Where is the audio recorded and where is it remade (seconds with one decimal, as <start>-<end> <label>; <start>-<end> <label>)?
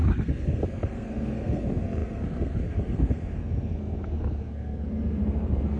0.0-5.8 remade